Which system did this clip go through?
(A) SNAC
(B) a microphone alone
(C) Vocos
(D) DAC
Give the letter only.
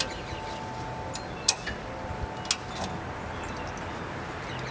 B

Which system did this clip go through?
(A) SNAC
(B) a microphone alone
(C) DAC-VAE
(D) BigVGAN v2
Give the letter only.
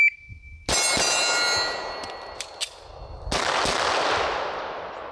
B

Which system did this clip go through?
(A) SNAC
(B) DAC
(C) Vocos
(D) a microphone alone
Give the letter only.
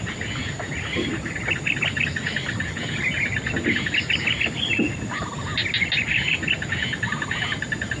D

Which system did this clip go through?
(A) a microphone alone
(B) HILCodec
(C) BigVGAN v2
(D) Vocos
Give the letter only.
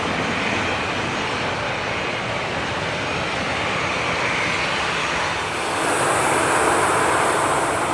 A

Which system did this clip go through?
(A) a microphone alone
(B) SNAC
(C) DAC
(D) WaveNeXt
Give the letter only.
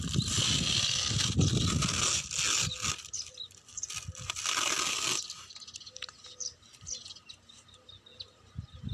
A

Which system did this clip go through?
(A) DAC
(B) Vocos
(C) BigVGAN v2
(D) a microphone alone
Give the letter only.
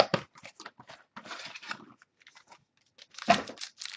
D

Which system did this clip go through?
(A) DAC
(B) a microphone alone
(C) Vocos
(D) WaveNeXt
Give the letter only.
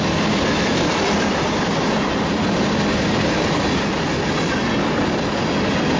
B